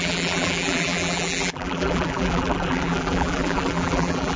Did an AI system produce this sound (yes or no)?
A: yes